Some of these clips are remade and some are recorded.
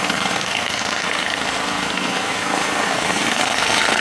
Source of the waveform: remade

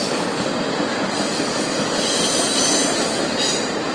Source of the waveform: recorded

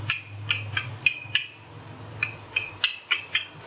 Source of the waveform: recorded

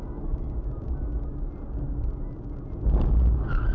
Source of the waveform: recorded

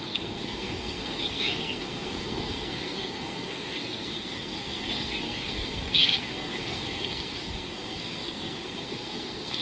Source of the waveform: remade